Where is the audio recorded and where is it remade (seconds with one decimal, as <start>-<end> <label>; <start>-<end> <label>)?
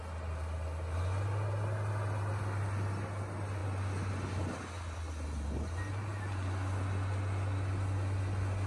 0.0-8.7 recorded